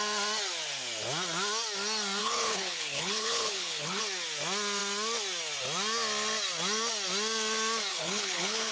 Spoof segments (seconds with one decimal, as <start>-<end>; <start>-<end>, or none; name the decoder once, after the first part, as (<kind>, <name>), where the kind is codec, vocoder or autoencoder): 2.2-4.0 (codec, HILCodec); 7.9-8.7